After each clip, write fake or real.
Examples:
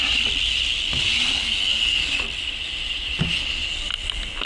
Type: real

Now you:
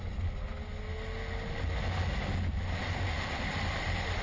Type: real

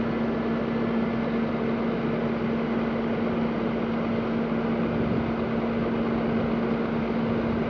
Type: real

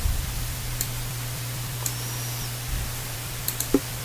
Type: fake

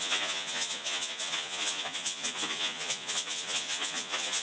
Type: fake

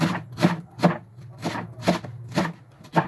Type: real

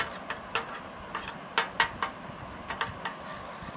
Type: real